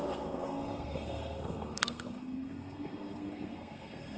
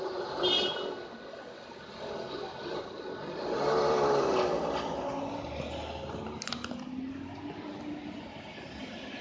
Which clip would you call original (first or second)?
second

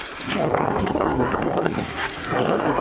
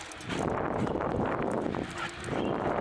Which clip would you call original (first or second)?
second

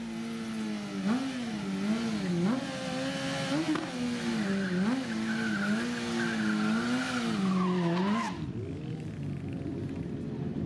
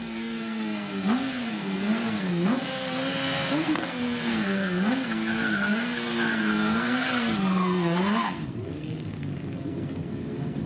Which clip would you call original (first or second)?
first